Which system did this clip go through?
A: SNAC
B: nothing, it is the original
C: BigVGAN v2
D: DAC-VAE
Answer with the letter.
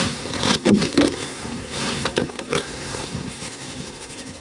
A